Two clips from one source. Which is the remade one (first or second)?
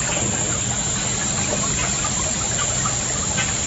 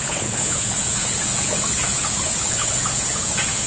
second